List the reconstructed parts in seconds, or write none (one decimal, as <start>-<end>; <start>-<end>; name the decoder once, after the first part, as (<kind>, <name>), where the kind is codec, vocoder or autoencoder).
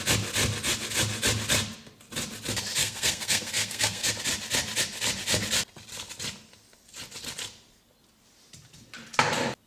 2.8-4.1 (codec, SNAC)